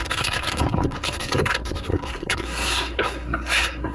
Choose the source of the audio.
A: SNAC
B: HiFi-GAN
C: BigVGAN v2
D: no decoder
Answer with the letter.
A